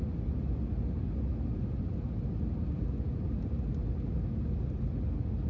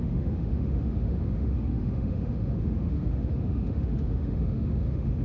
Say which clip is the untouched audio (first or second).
first